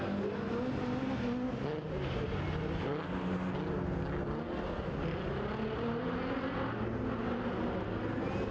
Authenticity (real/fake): real